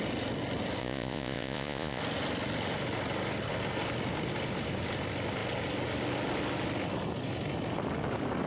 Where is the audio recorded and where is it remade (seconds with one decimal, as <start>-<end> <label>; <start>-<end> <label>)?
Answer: 0.0-0.8 recorded; 0.8-2.0 remade; 2.0-8.5 recorded